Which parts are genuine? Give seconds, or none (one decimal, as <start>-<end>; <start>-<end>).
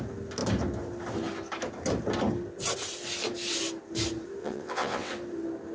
0.0-4.4; 5.1-5.7